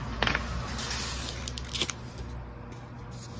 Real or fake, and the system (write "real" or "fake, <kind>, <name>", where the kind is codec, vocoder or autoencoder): real